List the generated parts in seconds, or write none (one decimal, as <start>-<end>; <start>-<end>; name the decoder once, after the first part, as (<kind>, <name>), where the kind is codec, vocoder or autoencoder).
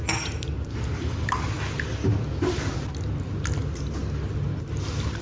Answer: none